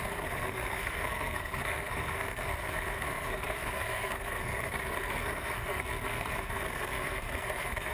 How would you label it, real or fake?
fake